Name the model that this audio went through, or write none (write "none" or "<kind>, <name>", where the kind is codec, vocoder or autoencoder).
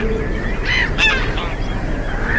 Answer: none